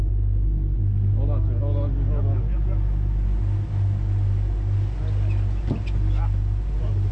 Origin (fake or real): real